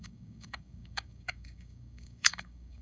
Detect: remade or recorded remade